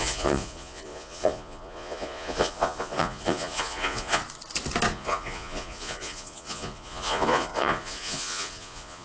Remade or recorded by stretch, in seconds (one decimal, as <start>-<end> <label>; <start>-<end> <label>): 0.0-4.2 remade; 4.2-4.9 recorded; 4.9-9.0 remade